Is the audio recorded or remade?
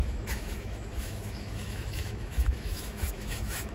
remade